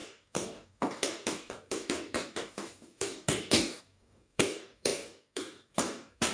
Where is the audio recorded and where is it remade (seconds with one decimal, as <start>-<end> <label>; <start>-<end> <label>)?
0.0-6.3 remade